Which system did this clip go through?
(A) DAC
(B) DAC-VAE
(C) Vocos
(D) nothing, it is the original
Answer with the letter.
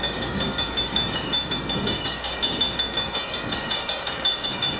A